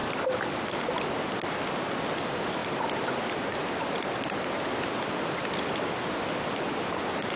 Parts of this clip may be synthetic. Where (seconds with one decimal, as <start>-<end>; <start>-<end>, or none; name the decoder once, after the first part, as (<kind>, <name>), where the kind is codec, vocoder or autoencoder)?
none